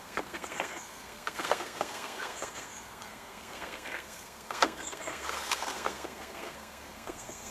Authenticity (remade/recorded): remade